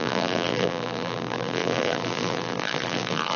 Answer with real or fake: fake